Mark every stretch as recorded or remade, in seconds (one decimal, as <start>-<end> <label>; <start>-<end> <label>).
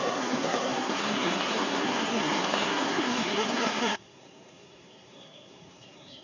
0.0-6.2 remade